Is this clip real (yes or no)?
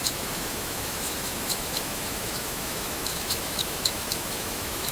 no